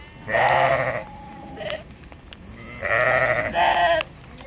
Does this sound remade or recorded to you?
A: recorded